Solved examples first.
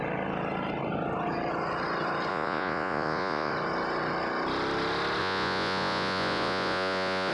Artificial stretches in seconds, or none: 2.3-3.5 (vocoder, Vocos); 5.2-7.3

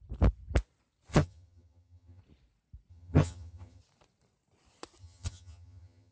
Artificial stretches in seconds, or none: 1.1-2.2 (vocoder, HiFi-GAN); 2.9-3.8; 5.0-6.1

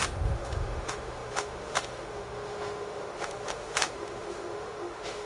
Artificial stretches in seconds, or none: 0.0-5.3 (autoencoder, DAC-VAE)